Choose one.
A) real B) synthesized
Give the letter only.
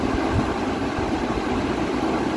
A